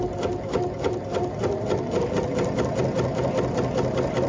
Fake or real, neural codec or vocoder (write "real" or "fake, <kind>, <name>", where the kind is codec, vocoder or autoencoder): real